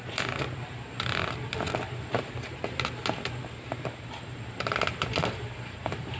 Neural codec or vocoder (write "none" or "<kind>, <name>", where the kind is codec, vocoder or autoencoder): none